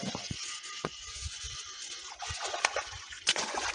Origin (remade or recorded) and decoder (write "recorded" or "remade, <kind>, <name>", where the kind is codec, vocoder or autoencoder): remade, vocoder, Vocos